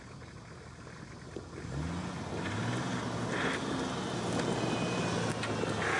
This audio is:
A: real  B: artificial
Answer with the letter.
A